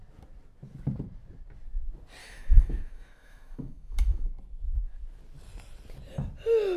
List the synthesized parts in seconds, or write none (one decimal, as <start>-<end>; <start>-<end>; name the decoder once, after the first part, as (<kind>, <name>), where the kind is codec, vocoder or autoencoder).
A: 2.2-4.3 (autoencoder, DAC-VAE)